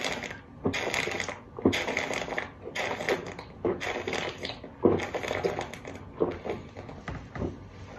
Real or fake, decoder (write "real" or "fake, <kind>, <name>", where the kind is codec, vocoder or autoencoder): real